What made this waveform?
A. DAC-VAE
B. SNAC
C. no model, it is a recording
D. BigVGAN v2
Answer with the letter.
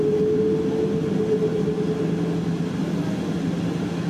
C